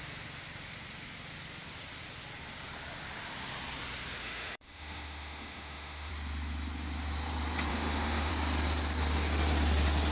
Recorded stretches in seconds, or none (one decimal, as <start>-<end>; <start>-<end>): 0.0-4.2; 6.1-7.7; 8.3-10.1